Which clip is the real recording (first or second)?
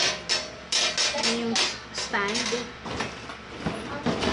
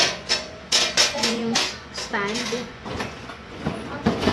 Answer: first